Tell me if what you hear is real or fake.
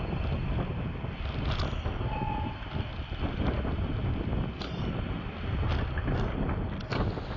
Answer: real